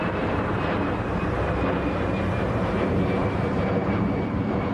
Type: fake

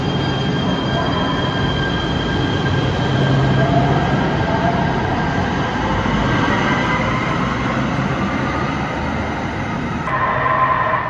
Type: real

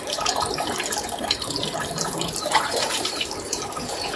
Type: fake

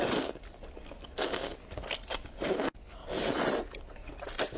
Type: real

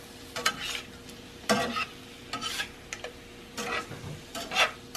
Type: real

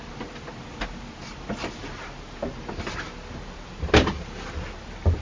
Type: real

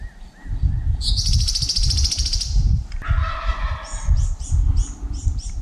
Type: real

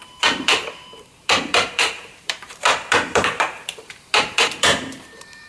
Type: fake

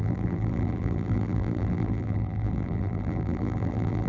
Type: fake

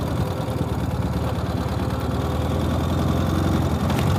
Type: real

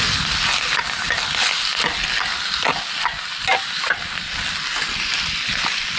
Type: real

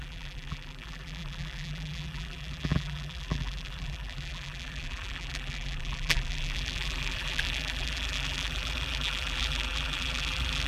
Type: fake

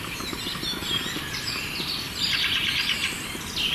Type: real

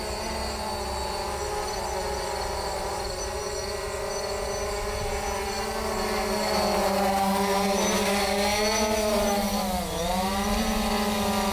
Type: real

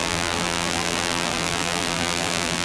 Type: fake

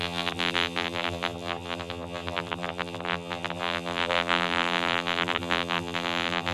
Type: fake